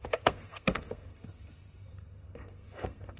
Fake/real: fake